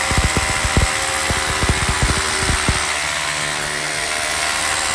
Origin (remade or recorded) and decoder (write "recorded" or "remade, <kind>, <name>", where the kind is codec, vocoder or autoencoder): recorded